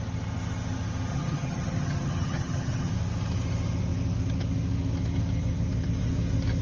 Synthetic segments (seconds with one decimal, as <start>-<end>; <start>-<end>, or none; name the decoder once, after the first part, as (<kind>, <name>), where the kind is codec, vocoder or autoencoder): 1.1-2.9 (vocoder, HiFi-GAN)